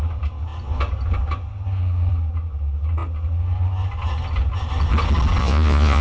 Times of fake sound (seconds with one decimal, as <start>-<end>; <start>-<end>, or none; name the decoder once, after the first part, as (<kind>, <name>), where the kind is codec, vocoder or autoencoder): 5.4-6.0 (vocoder, Vocos)